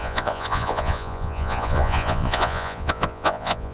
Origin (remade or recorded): remade